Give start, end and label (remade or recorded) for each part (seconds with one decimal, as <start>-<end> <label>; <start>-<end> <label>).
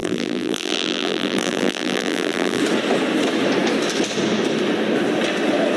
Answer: 0.0-2.6 remade; 2.6-5.8 recorded